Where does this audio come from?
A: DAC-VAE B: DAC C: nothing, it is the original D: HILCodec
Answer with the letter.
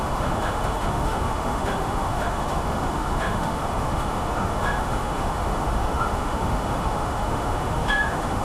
A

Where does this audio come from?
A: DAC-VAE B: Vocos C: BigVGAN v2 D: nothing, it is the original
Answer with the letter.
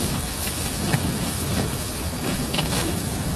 A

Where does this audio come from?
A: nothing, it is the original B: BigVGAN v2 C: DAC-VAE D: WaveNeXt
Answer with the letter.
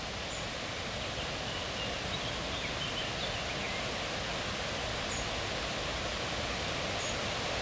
A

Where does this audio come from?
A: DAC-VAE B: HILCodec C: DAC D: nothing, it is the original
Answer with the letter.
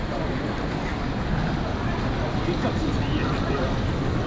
D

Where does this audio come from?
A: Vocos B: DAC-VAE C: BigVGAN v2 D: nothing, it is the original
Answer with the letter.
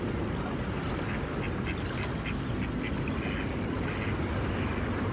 D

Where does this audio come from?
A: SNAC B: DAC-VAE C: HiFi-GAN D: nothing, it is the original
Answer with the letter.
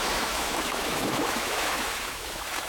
B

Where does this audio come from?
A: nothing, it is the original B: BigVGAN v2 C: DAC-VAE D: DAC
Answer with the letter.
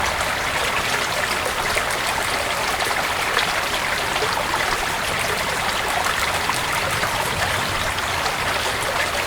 A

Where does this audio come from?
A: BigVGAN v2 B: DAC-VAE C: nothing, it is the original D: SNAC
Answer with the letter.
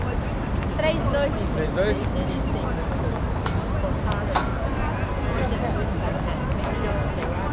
C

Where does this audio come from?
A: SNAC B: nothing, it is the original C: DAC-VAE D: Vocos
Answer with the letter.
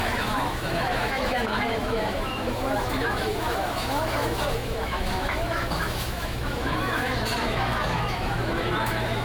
C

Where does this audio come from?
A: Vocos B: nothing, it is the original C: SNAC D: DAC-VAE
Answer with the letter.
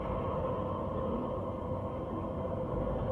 B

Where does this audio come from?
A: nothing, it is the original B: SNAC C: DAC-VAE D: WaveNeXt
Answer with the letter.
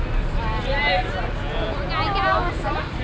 A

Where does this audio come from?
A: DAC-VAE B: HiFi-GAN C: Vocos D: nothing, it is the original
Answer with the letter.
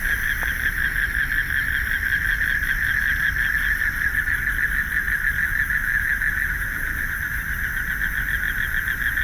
D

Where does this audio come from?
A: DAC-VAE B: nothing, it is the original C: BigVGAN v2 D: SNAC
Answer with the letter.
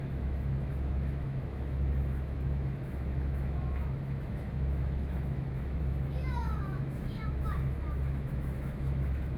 A